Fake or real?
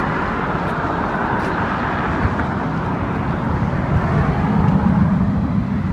real